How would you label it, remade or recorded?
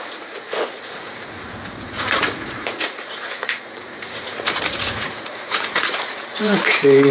remade